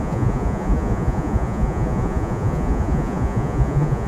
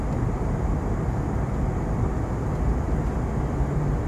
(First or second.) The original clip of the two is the second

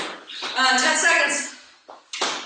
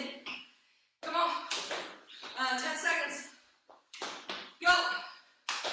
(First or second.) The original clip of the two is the first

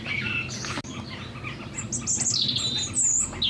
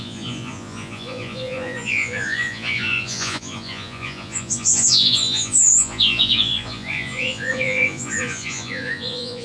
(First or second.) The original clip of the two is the first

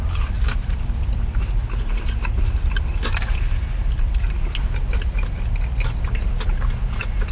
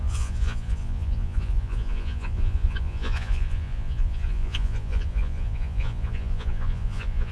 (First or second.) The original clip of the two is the first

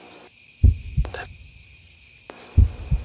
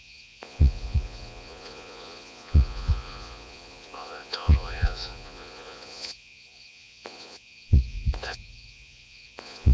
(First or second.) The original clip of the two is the first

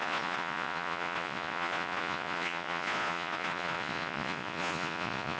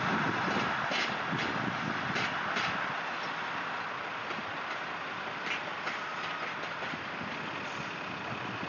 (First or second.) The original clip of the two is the second